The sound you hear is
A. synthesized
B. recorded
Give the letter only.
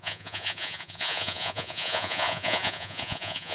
A